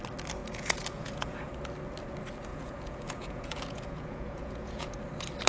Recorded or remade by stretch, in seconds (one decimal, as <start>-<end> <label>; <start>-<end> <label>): 0.0-0.4 recorded; 0.4-1.5 remade; 1.5-2.5 recorded; 2.5-5.0 remade; 5.0-5.5 recorded